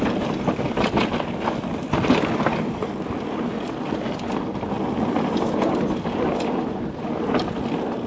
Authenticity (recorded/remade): recorded